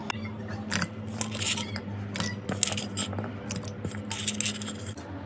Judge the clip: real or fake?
real